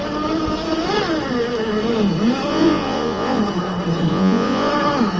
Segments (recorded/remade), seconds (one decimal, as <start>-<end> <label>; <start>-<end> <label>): 0.0-2.5 recorded; 2.5-3.4 remade; 3.4-4.1 recorded; 4.1-4.7 remade; 4.7-5.2 recorded